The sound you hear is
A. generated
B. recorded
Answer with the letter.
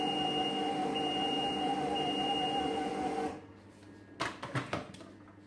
B